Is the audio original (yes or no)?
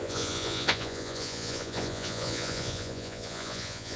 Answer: no